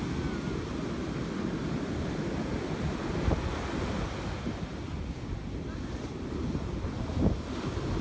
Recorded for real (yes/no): yes